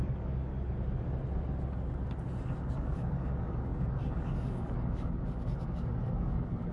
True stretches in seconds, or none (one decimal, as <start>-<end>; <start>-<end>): 0.5-2.7